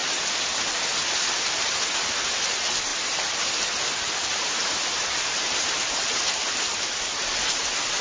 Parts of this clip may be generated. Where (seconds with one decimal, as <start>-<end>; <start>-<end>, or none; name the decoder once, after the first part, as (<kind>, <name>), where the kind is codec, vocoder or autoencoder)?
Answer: 2.9-3.5 (vocoder, BigVGAN v2); 4.3-7.6